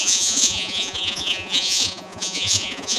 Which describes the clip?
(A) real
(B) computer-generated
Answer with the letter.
B